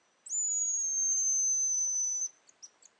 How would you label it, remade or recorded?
recorded